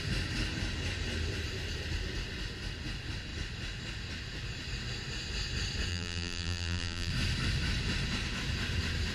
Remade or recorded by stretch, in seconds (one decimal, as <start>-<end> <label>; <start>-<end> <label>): 0.0-5.9 recorded; 5.9-7.1 remade; 7.1-9.1 recorded